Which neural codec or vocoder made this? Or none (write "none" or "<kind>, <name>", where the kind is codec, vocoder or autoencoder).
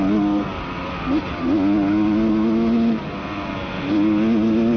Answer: none